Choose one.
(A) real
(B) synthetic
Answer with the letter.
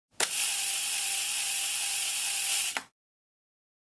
A